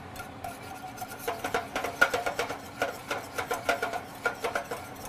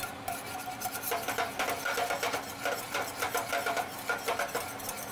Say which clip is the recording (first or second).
second